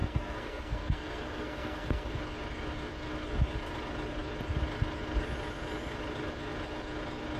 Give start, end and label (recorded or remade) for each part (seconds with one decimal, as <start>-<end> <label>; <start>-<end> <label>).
0.0-2.2 remade; 2.2-7.4 recorded